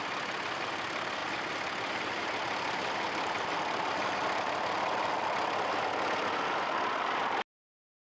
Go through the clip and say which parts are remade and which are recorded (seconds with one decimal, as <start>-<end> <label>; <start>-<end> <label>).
0.0-1.2 recorded; 1.2-5.7 remade; 5.7-8.0 recorded